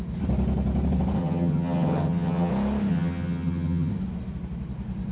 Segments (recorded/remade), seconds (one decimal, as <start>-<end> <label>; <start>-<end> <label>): 0.0-1.2 recorded; 1.2-2.5 remade; 2.5-2.9 recorded; 2.9-3.9 remade; 3.9-5.1 recorded